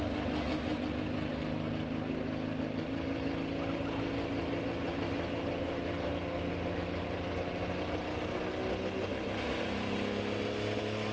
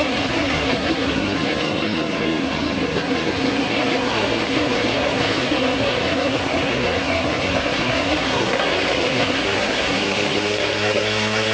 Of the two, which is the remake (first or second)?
second